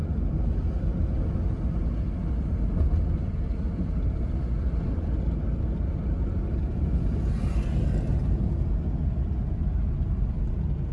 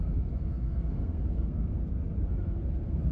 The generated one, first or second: second